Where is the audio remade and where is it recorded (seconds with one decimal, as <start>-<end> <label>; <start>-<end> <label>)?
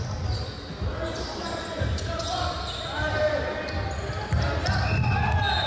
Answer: 0.0-5.7 recorded